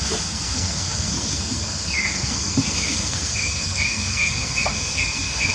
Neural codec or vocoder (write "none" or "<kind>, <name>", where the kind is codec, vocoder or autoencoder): codec, SNAC